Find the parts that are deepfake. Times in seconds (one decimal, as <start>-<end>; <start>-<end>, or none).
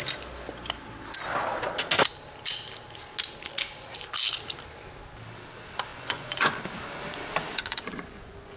5.9-6.6; 7.5-8.6